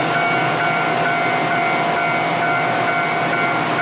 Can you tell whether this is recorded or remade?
recorded